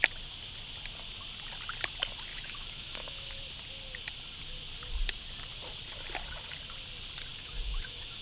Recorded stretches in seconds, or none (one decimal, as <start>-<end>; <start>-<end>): 0.0-2.3; 3.3-7.3